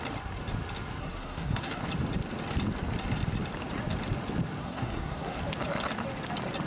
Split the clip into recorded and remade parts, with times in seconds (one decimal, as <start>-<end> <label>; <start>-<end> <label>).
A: 0.0-1.0 recorded; 1.0-1.8 remade; 1.8-4.6 recorded; 4.6-5.4 remade; 5.4-6.7 recorded